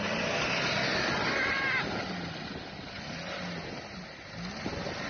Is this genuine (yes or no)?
yes